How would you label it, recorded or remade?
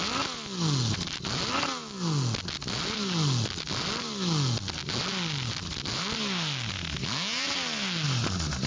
recorded